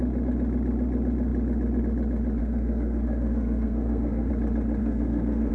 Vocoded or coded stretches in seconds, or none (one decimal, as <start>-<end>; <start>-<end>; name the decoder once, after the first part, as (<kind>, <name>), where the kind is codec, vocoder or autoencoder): 2.4-4.3 (codec, SNAC); 4.8-5.5